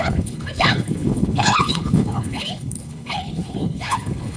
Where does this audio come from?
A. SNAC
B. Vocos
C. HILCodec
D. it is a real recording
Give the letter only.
C